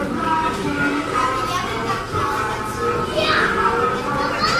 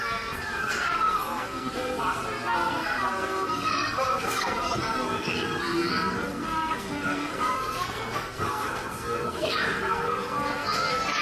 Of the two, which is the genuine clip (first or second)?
first